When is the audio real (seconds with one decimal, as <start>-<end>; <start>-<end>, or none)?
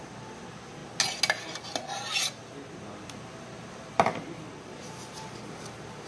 0.0-6.1